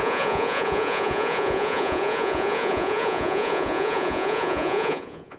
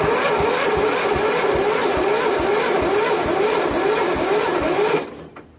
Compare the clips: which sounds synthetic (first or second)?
first